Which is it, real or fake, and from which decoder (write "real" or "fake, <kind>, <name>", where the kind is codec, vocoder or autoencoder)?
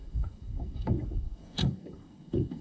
fake, codec, SNAC